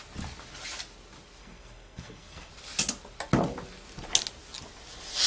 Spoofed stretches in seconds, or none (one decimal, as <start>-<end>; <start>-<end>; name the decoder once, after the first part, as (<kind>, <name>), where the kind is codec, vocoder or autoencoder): 1.4-2.5 (codec, SNAC)